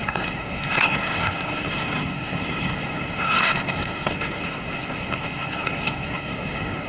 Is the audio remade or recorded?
remade